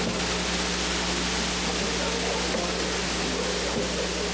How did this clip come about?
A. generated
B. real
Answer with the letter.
B